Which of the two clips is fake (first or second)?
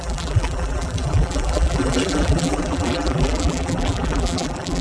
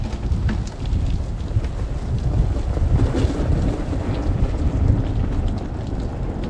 first